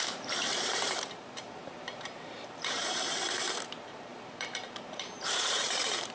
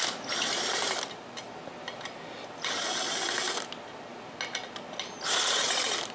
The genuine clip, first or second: second